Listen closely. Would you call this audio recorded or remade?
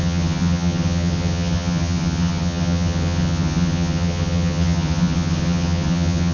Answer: remade